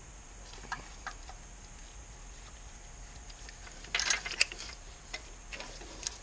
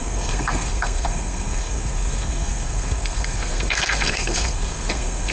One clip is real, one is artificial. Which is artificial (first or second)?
second